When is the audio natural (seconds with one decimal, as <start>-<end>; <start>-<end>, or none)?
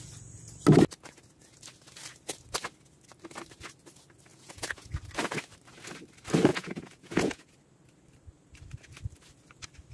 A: 0.0-4.3; 4.9-6.5; 7.5-9.9